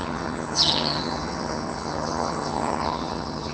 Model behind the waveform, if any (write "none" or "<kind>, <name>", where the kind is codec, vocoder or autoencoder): vocoder, HiFi-GAN